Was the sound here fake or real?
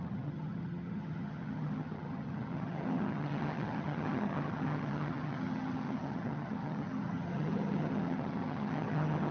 fake